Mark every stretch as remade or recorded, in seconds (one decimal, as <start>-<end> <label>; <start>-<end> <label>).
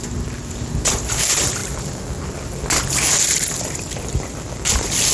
0.0-5.1 recorded